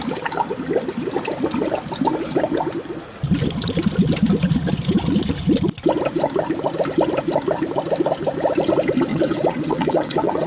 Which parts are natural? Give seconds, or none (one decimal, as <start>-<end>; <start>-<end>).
0.0-9.1